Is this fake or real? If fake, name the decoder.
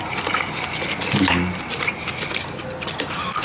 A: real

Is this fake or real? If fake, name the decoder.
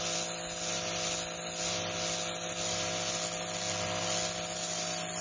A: real